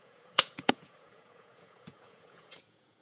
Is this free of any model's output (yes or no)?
no